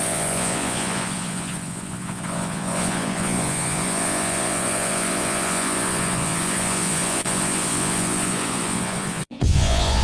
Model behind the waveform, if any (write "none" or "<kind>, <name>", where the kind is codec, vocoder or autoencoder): vocoder, Vocos